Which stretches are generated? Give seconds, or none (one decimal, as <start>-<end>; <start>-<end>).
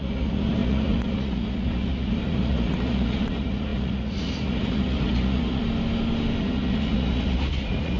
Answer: 0.0-5.6; 6.4-8.0